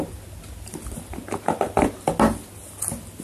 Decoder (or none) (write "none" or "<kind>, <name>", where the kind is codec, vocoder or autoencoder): none